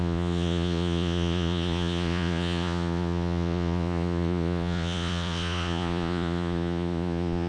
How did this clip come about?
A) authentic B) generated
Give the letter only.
B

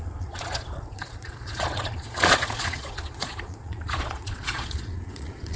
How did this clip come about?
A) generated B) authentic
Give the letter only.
A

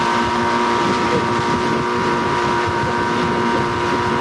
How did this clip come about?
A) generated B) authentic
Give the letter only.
A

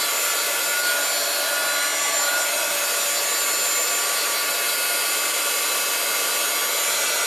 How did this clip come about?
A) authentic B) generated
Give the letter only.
A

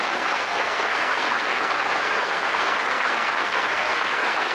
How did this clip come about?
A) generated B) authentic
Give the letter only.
A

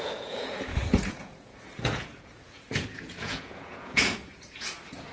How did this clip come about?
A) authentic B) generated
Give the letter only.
B